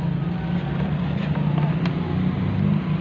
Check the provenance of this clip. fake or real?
real